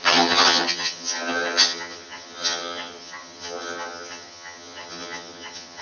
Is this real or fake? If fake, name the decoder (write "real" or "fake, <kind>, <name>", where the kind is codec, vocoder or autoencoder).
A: fake, vocoder, HiFi-GAN